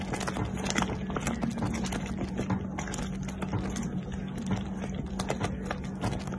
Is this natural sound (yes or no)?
yes